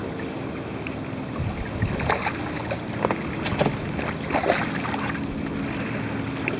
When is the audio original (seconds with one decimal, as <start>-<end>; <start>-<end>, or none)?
0.0-6.6